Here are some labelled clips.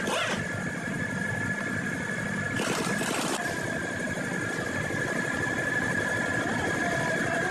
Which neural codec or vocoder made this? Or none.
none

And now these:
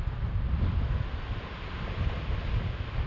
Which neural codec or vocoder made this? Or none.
none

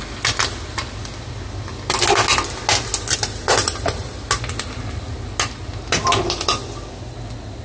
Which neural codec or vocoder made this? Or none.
none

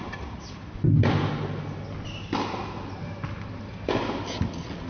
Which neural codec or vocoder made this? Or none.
none